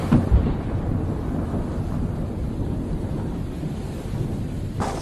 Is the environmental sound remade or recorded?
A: recorded